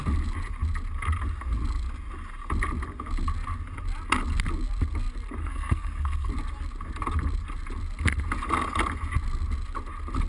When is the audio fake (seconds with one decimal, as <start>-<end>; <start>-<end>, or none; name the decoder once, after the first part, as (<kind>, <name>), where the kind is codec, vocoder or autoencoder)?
5.4-6.3 (codec, SNAC)